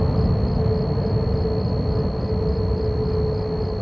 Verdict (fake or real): real